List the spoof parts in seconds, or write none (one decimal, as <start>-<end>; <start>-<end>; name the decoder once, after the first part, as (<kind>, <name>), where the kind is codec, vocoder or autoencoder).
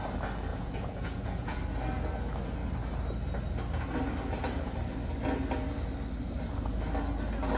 0.5-1.6 (vocoder, Vocos)